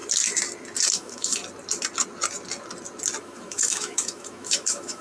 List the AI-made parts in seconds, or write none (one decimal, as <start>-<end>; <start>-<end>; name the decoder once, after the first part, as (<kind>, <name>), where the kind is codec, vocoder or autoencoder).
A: 0.9-1.4 (autoencoder, DAC-VAE); 3.2-5.0